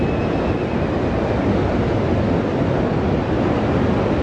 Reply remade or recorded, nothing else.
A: recorded